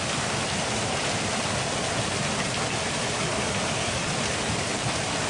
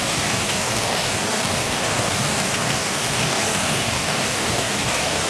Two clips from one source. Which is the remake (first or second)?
second